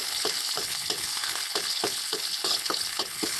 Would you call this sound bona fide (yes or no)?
no